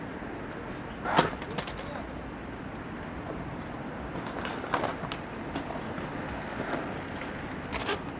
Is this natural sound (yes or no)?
yes